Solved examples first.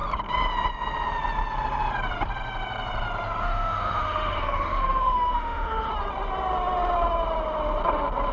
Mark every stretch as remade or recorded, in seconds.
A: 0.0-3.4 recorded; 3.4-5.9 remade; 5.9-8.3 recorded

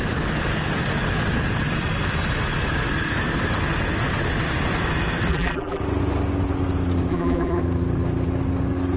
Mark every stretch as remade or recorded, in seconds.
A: 0.0-5.3 recorded; 5.3-5.8 remade; 5.8-7.1 recorded; 7.1-7.6 remade; 7.6-9.0 recorded

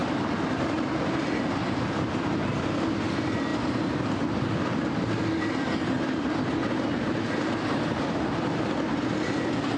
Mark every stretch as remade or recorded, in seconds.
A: 0.0-9.8 recorded

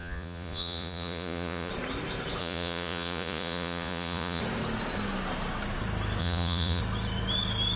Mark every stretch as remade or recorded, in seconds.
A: 0.0-1.7 remade; 1.7-2.4 recorded; 2.4-4.4 remade; 4.4-6.2 recorded; 6.2-6.8 remade; 6.8-7.8 recorded

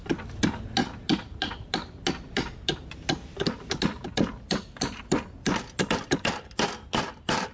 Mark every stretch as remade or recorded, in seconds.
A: 0.0-7.5 recorded

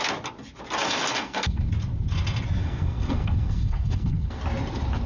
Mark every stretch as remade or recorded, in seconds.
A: 0.0-1.1 recorded; 1.1-1.7 remade; 1.7-2.6 recorded; 2.6-4.4 remade; 4.4-5.1 recorded

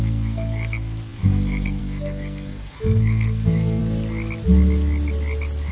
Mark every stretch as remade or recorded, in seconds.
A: 0.0-3.8 remade; 3.8-5.7 recorded